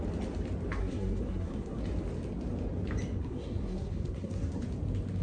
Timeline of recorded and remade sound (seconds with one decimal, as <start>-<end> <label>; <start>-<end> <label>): 0.0-0.8 recorded; 0.8-1.8 remade; 1.8-3.2 recorded; 3.2-4.6 remade; 4.6-5.2 recorded